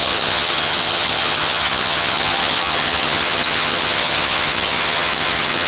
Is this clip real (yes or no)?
no